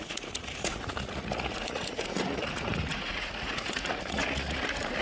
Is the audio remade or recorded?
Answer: remade